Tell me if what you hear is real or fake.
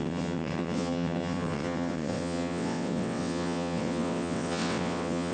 fake